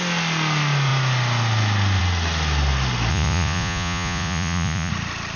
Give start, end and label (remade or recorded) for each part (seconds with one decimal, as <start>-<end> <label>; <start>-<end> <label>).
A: 0.0-3.1 recorded; 3.1-4.9 remade; 4.9-5.4 recorded